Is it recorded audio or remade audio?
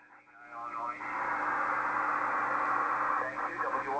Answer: recorded